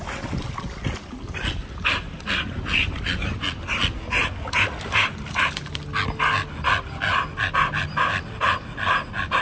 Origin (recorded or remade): recorded